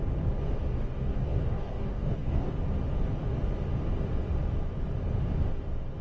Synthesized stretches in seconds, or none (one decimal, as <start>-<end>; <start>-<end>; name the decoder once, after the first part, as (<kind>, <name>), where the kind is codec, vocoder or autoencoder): 0.8-2.5 (codec, DAC)